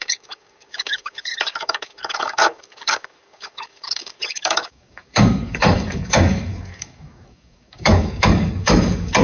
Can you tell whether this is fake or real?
fake